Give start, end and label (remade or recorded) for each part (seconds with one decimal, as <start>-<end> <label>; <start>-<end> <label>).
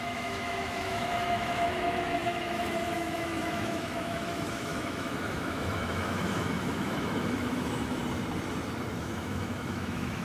0.0-8.0 remade; 8.0-9.0 recorded; 9.0-10.2 remade